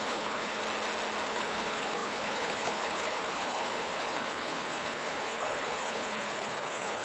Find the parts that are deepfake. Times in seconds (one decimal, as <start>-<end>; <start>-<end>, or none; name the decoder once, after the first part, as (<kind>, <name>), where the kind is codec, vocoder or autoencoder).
0.0-0.6 (codec, HILCodec); 1.3-7.0